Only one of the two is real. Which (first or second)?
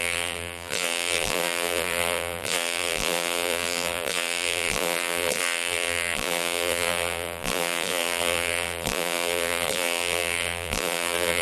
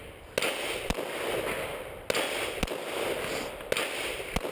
second